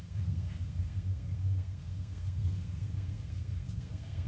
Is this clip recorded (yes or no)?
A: no